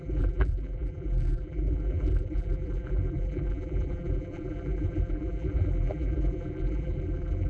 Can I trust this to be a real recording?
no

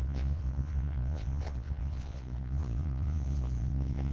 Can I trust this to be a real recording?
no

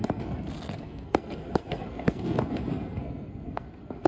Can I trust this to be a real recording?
no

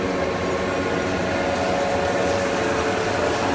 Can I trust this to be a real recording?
yes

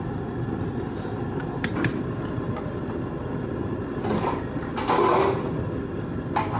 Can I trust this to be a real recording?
yes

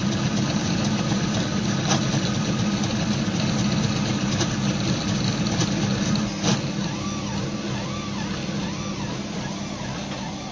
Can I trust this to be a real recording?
yes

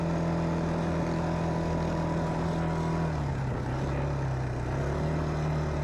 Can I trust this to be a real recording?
yes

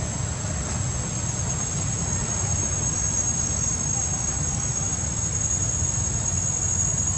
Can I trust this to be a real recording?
yes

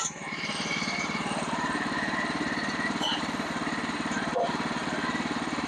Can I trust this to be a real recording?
no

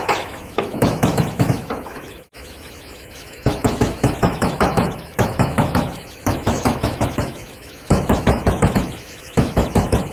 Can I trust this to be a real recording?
no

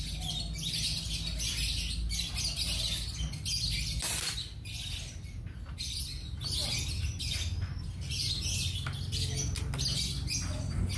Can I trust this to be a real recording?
yes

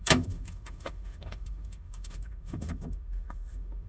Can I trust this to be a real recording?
no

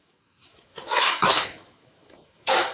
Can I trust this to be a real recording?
no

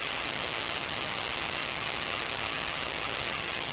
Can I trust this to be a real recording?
no